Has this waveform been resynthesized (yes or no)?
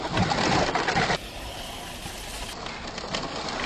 no